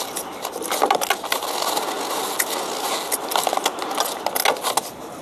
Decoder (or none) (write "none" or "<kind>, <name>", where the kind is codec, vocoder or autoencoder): none